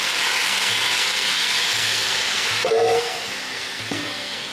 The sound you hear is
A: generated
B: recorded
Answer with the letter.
A